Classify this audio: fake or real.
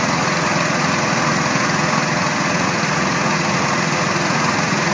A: fake